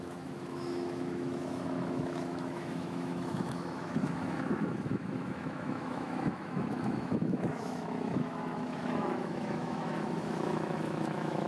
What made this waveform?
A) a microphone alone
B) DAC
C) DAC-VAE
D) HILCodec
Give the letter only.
C